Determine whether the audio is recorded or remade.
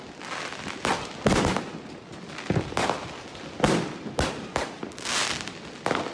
recorded